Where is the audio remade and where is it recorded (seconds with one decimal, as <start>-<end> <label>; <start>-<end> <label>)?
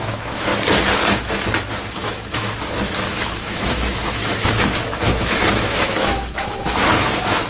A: 0.0-0.5 remade; 0.5-1.9 recorded; 1.9-7.5 remade